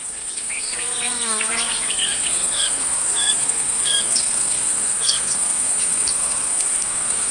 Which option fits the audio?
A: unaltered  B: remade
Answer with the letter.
B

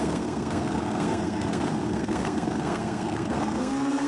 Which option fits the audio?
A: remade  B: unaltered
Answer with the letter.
A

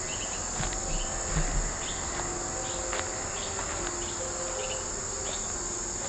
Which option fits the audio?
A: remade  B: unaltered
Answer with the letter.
B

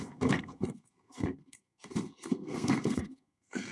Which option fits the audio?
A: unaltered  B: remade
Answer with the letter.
B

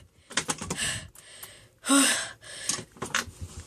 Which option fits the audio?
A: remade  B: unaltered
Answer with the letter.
B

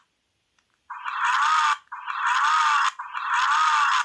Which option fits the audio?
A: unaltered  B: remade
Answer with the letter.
A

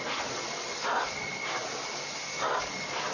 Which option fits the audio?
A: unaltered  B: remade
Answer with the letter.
A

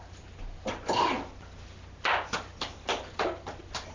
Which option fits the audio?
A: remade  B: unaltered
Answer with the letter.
B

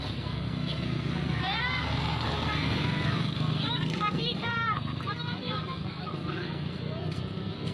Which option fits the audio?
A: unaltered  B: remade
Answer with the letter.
B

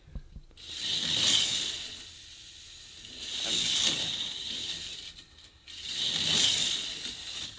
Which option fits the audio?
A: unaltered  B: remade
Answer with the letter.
A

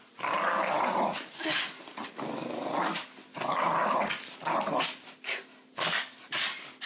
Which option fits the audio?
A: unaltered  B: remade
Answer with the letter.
A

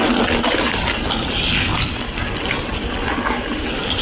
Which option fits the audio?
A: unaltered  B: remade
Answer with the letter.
A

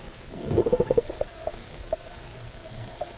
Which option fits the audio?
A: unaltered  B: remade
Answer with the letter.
B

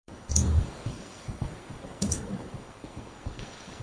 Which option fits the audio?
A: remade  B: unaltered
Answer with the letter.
A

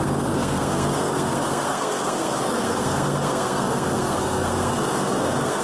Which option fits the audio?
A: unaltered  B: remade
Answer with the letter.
B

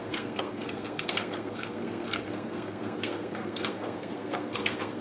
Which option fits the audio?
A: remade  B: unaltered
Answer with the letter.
A